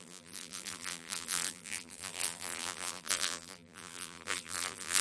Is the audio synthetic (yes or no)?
yes